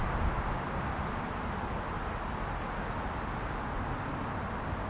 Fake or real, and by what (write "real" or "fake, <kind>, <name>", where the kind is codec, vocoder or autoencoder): real